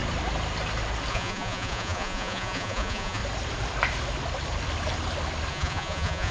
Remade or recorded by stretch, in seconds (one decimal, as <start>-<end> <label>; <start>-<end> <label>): 0.0-1.1 recorded; 1.1-3.2 remade; 3.2-5.5 recorded; 5.5-6.3 remade